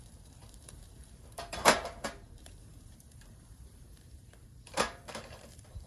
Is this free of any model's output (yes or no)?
no